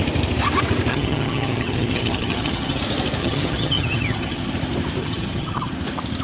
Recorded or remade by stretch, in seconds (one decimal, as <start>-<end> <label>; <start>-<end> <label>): 0.0-0.9 recorded; 0.9-2.8 remade; 2.8-3.2 recorded; 3.2-4.5 remade; 4.5-5.0 recorded; 5.0-5.7 remade; 5.7-6.2 recorded